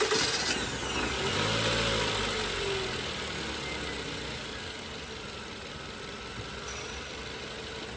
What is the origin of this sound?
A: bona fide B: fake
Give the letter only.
A